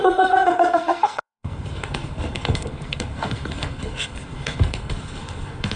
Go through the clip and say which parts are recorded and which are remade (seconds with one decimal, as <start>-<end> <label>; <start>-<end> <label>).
0.0-5.8 remade